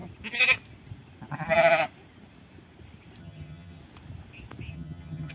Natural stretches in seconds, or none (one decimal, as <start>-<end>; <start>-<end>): 0.0-3.2; 3.8-4.7